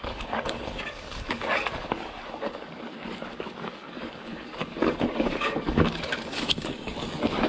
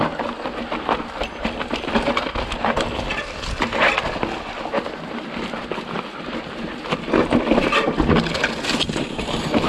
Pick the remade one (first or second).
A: first